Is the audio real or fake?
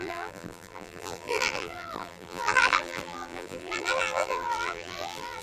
fake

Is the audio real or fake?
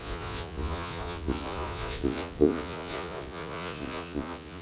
fake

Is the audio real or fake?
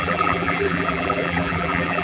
fake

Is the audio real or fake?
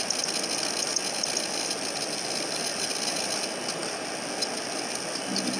real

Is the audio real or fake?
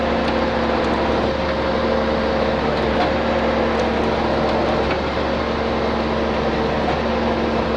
real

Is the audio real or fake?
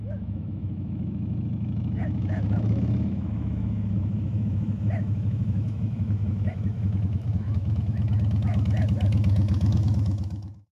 fake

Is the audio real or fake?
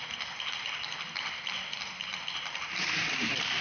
fake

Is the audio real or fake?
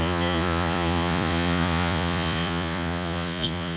fake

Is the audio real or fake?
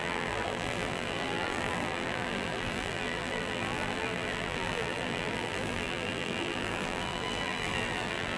fake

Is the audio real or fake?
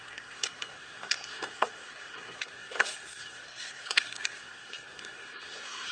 fake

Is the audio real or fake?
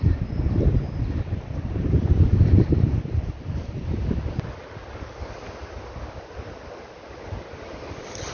real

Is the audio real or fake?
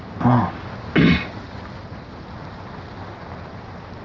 real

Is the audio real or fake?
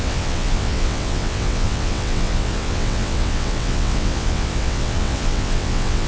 fake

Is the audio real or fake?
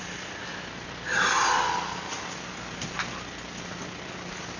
real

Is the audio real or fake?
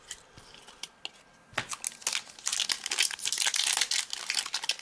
real